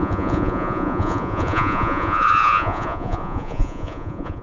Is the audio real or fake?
fake